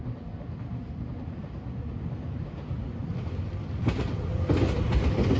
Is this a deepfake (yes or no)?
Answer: no